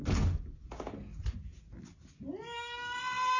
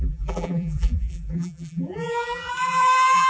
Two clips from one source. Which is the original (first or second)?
first